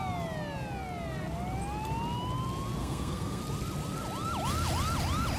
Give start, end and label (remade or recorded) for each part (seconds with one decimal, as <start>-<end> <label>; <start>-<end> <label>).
0.0-2.8 recorded; 2.8-3.4 remade; 3.4-5.4 recorded